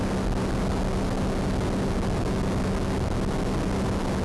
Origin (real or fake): real